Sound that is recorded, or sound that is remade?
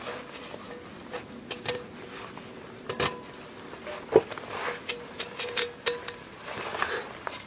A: recorded